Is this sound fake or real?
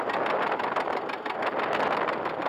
real